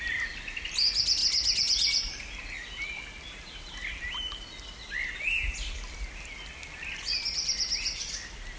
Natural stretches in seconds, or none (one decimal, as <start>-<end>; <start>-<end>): 0.0-8.6

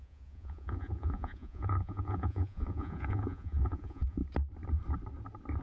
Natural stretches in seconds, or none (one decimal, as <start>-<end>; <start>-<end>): 4.2-5.6

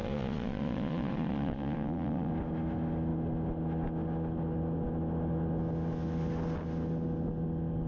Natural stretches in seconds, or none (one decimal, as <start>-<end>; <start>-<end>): 2.3-7.9

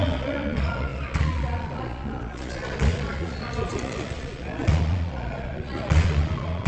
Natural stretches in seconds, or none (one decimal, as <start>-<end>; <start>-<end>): none

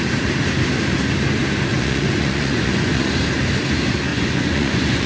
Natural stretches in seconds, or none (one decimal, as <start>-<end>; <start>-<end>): 0.0-1.7; 3.1-4.1

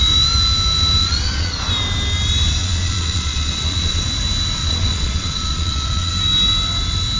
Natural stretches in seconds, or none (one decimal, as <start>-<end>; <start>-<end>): 0.0-1.0; 1.7-2.6; 4.0-4.6; 6.1-7.2

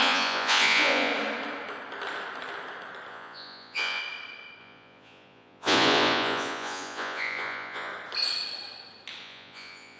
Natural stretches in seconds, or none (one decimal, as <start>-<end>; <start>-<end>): 1.1-3.1; 4.0-4.6; 7.9-9.2